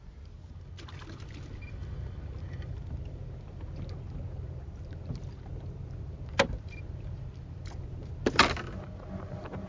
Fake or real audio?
real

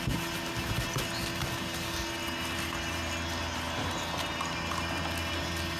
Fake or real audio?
real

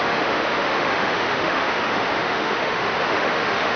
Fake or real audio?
fake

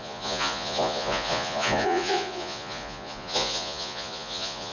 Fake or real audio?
fake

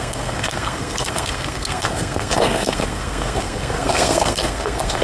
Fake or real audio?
fake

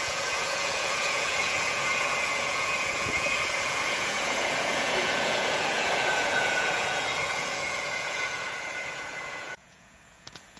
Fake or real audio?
fake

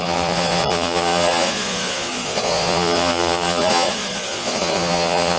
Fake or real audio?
fake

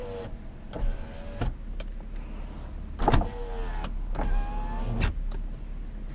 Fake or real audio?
real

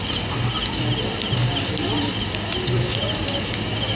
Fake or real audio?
real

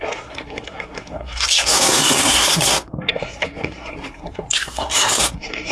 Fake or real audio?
fake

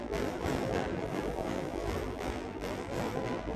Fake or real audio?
fake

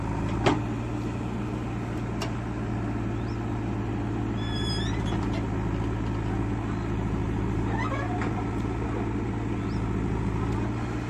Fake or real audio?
real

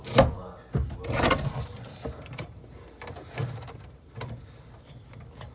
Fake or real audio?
real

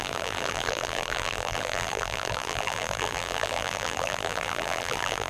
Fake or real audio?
fake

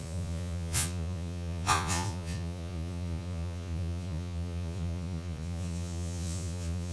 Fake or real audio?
fake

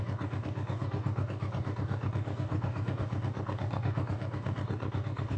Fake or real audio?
fake